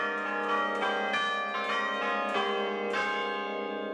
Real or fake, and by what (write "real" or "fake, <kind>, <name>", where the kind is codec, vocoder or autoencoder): real